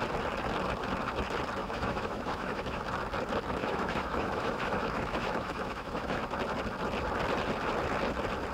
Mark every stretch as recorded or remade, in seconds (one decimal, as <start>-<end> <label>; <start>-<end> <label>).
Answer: 0.0-1.6 recorded; 1.6-2.8 remade; 2.8-3.6 recorded; 3.6-6.2 remade; 6.2-8.5 recorded